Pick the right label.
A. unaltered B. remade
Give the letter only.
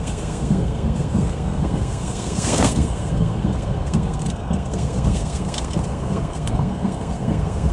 B